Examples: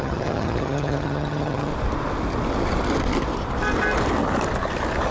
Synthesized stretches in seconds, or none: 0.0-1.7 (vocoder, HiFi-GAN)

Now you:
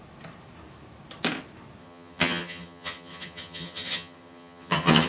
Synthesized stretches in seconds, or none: 1.8-5.1 (vocoder, HiFi-GAN)

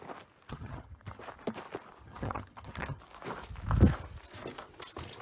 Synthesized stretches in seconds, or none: 0.5-1.2 (vocoder, HiFi-GAN); 2.0-3.0

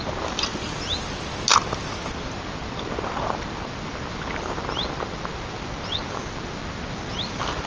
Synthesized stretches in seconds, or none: none

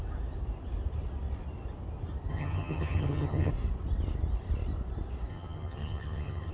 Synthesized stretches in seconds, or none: 2.3-3.5 (vocoder, HiFi-GAN); 5.3-6.5

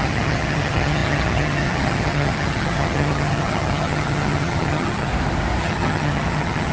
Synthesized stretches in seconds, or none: 0.0-5.1 (vocoder, HiFi-GAN); 5.6-6.7